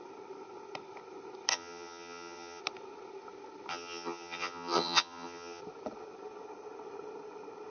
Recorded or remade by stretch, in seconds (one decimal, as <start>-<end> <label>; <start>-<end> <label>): 0.0-1.5 recorded; 1.5-2.6 remade; 2.6-3.7 recorded; 3.7-5.6 remade; 5.6-7.7 recorded